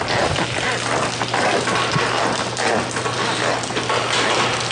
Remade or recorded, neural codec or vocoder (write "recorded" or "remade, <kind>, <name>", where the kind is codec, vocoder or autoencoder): recorded